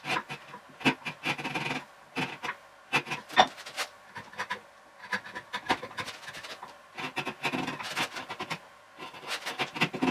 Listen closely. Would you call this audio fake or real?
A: real